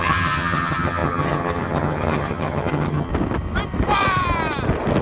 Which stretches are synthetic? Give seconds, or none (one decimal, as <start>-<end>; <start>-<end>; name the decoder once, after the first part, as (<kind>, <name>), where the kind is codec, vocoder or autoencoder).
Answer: 0.0-3.1 (vocoder, HiFi-GAN)